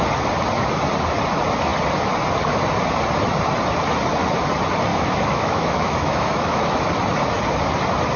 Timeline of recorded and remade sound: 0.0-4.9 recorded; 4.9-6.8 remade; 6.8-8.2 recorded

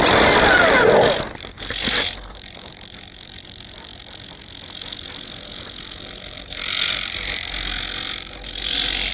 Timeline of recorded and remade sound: 0.0-9.1 recorded

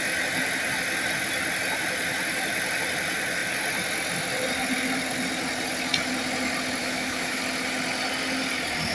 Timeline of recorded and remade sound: 0.0-6.8 recorded; 6.8-7.4 remade; 7.4-8.9 recorded

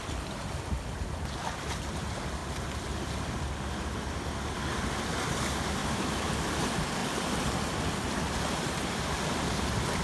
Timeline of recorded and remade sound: 0.0-5.8 recorded; 5.8-6.3 remade; 6.3-10.0 recorded

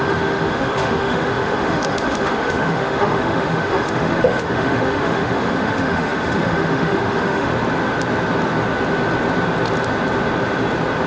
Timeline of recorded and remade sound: 0.0-7.5 remade; 7.5-11.1 recorded

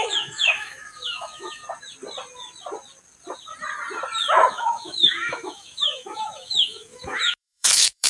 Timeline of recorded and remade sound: 0.0-1.6 remade; 1.6-4.5 recorded; 4.5-8.1 remade

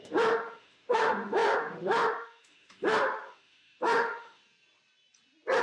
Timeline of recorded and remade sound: 0.0-4.4 remade; 4.4-5.6 recorded